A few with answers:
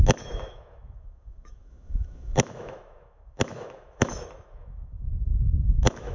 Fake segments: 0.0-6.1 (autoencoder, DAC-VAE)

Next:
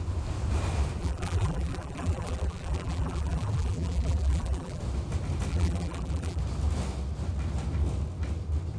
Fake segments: 1.0-4.8 (vocoder, BigVGAN v2); 5.5-6.4

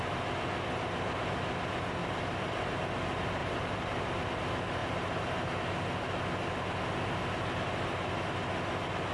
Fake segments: 2.0-2.8 (vocoder, BigVGAN v2); 3.4-4.3; 4.8-5.5

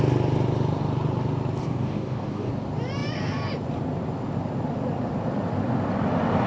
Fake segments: 1.6-2.5 (codec, DAC)